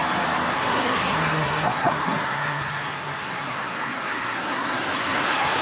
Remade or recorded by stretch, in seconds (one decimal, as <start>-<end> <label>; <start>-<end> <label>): 0.0-0.5 recorded; 0.5-5.6 remade